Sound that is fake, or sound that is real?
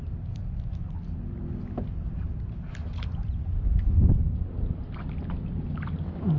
real